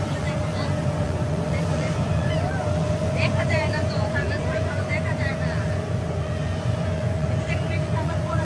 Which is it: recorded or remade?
remade